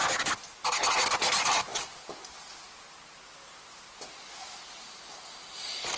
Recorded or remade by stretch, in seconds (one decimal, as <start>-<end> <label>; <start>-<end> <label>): 0.0-6.0 recorded